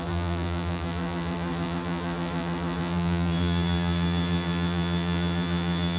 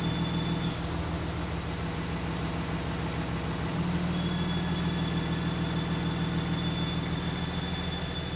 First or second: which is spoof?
first